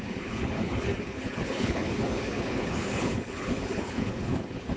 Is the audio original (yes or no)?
no